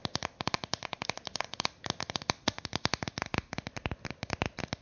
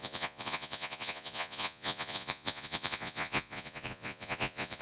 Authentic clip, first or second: first